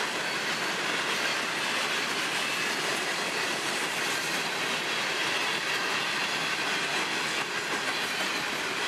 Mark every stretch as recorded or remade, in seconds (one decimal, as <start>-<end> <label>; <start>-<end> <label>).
0.0-8.9 recorded